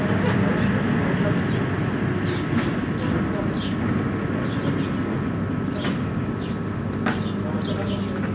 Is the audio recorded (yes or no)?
yes